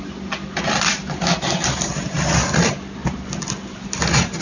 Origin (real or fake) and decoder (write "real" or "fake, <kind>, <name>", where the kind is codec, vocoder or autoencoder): real